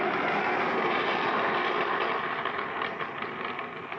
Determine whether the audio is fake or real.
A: real